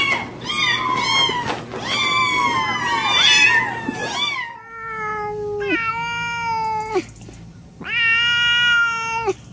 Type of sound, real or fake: real